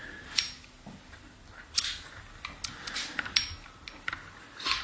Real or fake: real